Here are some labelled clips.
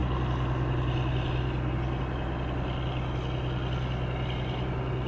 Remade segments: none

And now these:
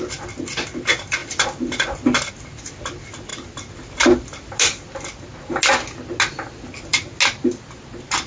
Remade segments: none

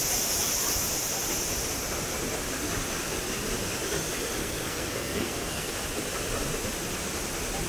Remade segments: 4.4-5.7 (codec, SNAC)

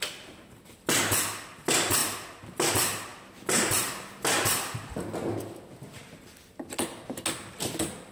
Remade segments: none

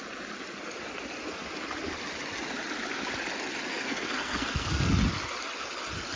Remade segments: 3.7-4.9 (codec, SNAC)

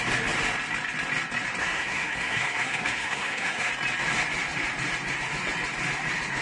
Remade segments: 1.6-3.7 (codec, SNAC)